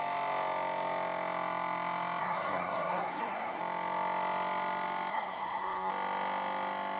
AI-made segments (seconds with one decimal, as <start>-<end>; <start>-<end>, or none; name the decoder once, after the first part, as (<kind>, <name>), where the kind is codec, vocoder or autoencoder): 2.2-3.6 (codec, SNAC); 5.1-5.9

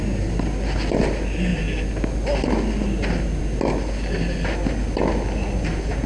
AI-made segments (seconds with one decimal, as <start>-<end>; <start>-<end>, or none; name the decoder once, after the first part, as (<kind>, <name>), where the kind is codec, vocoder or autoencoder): none